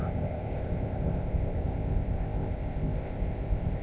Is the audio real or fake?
fake